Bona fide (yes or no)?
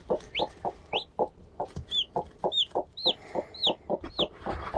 yes